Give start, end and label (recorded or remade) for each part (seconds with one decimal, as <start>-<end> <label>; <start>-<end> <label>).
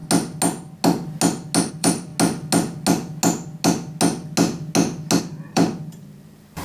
0.0-1.7 recorded; 1.7-2.1 remade; 2.1-5.2 recorded; 5.2-6.6 remade